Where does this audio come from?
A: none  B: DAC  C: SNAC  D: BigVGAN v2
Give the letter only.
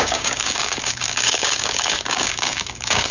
B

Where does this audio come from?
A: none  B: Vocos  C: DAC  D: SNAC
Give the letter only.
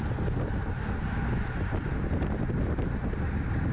A